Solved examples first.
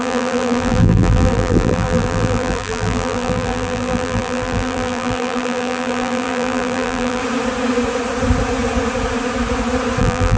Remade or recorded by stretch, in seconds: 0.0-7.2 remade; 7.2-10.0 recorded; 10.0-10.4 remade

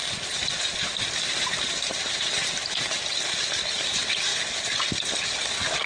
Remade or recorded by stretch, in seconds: 0.0-4.3 remade; 4.3-5.9 recorded

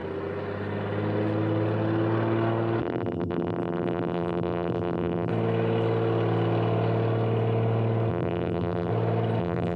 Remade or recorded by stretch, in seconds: 0.0-2.8 recorded; 2.8-5.3 remade; 5.3-8.1 recorded; 8.1-8.9 remade; 8.9-9.4 recorded; 9.4-9.8 remade

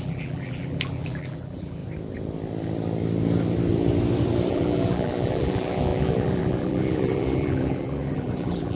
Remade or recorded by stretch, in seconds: 0.0-1.8 remade; 1.8-4.5 recorded; 4.5-8.8 remade

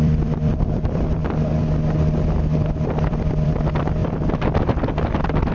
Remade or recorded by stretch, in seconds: 0.0-1.2 remade; 1.2-3.1 recorded; 3.1-5.5 remade

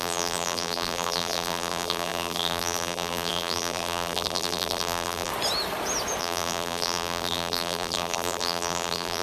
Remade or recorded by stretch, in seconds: 0.0-5.3 remade; 5.3-6.2 recorded; 6.2-9.2 remade

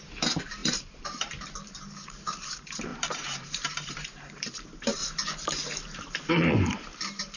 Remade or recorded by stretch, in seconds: 0.0-5.0 remade; 5.0-6.3 recorded; 6.3-7.4 remade

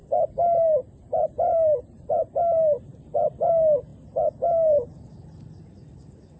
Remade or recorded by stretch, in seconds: 0.0-3.5 remade; 3.5-6.4 recorded